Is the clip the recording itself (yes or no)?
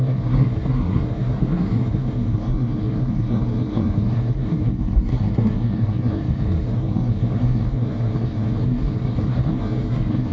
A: no